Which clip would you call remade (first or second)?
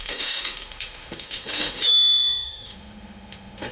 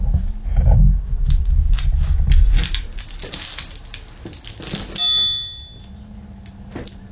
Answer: first